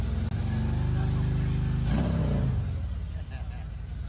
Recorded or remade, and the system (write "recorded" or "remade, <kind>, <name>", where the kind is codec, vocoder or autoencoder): recorded